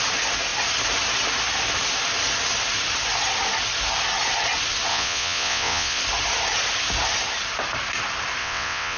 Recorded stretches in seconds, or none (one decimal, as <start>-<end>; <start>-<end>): 0.0-4.9; 6.0-8.4